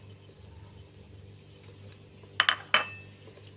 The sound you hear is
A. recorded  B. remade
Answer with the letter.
A